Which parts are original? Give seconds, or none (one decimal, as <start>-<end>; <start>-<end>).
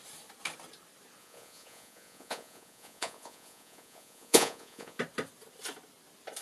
0.0-1.2; 5.0-6.4